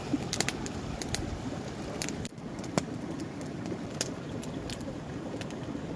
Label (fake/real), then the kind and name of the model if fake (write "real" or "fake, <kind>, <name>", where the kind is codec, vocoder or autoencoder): real